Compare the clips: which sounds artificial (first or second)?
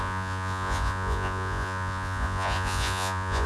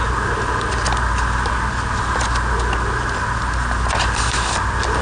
first